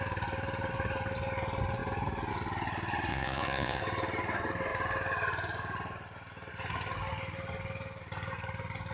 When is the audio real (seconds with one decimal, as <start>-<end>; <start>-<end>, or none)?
0.0-3.1; 3.8-8.9